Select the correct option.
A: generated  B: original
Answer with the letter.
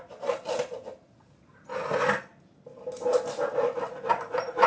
B